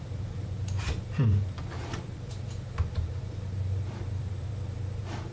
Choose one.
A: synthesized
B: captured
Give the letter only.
A